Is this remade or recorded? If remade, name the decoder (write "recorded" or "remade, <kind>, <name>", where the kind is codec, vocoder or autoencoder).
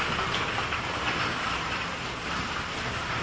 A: recorded